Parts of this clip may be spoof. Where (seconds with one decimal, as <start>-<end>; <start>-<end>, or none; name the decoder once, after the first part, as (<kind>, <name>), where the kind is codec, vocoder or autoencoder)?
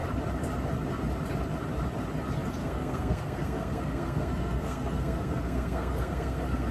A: 2.6-6.7 (codec, SNAC)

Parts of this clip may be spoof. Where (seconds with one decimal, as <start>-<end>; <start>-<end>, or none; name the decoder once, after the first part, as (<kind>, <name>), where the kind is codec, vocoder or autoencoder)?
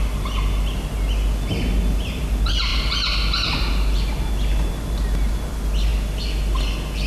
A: none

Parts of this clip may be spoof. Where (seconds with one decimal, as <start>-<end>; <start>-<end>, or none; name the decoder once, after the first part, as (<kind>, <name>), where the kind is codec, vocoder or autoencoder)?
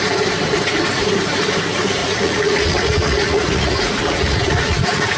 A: 2.0-5.2 (vocoder, Vocos)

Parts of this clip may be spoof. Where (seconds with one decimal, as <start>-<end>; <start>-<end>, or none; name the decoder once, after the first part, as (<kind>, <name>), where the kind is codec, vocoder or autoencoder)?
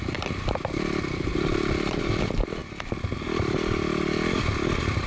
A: 1.3-2.2 (vocoder, BigVGAN v2)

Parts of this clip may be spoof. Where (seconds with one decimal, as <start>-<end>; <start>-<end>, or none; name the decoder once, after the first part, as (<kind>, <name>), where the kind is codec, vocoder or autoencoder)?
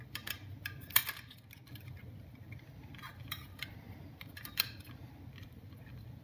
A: 0.0-1.0 (vocoder, BigVGAN v2); 1.7-6.2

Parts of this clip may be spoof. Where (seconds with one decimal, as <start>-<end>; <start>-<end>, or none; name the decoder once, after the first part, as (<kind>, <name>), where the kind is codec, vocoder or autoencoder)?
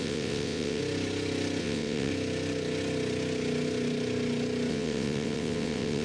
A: 0.0-0.8 (vocoder, WaveNeXt); 1.6-2.1; 4.7-6.0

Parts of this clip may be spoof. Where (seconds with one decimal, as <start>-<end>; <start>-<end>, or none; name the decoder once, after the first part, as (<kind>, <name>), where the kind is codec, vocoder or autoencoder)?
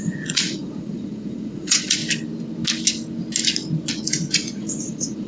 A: 0.0-2.0 (vocoder, Vocos); 3.9-5.3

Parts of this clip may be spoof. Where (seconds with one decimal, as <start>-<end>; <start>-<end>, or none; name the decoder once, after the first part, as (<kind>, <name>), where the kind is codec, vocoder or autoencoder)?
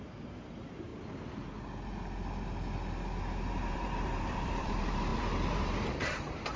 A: 0.0-0.9 (vocoder, BigVGAN v2); 3.2-6.6